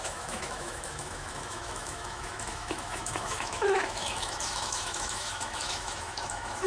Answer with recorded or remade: remade